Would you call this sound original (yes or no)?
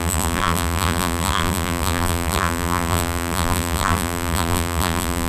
no